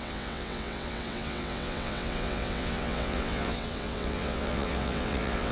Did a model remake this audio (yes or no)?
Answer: yes